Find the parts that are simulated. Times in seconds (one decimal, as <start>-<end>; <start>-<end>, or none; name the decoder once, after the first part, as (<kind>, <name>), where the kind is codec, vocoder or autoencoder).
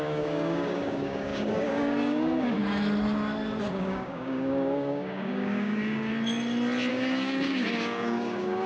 0.0-2.6 (codec, DAC); 3.7-6.1; 6.9-8.7